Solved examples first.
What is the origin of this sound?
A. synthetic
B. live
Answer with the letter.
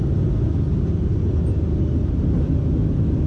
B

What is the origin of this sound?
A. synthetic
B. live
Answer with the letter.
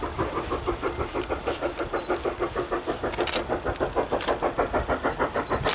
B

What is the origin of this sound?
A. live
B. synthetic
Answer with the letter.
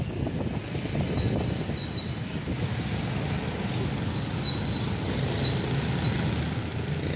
A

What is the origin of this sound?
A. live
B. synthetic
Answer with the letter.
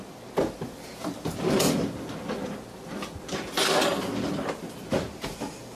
A